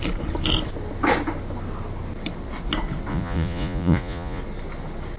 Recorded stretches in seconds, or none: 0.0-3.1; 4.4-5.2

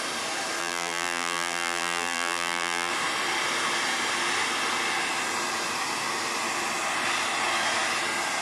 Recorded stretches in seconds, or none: 0.0-0.6; 2.9-8.4

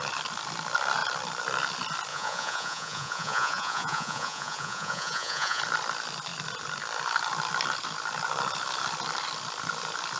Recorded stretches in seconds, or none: 0.0-2.1; 5.6-10.2

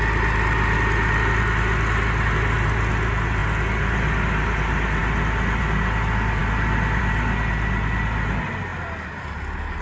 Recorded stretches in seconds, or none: 0.0-9.8